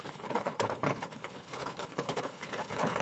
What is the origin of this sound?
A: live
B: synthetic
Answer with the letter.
B